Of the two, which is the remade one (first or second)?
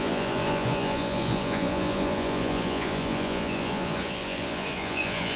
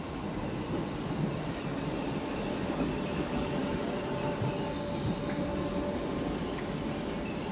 first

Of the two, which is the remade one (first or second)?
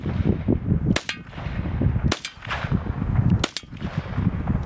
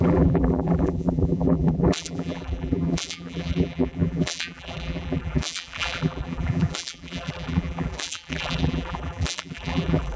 second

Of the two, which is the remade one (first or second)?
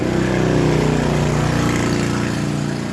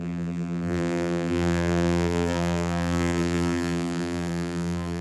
second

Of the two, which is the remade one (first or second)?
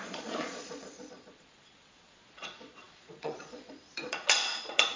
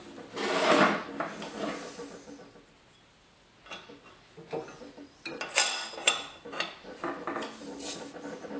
first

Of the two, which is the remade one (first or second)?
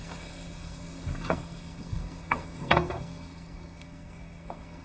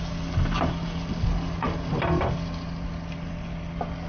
first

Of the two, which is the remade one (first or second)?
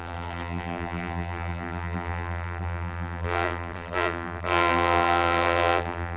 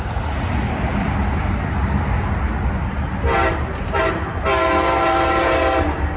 first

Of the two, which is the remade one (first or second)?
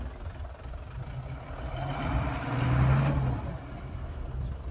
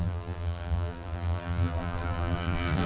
second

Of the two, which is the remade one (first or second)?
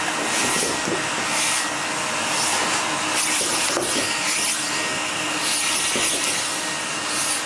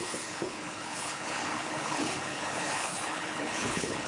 second